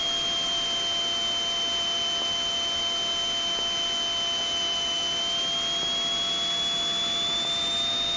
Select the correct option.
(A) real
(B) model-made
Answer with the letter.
A